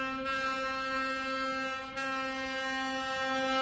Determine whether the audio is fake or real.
real